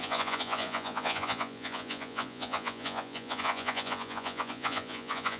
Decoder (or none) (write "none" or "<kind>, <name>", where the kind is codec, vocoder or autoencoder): vocoder, Vocos